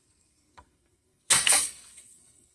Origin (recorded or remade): remade